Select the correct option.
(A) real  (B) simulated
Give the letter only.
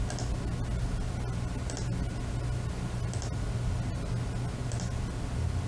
A